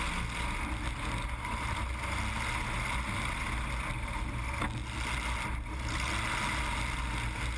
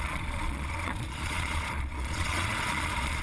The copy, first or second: second